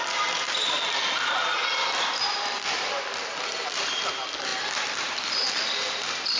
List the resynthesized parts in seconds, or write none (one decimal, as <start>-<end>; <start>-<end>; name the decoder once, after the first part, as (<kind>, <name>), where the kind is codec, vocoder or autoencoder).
none